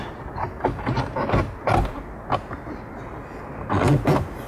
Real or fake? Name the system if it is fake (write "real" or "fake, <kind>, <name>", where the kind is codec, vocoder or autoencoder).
real